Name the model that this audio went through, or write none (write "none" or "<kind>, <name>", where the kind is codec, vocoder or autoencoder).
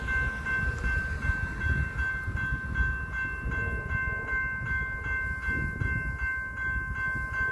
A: none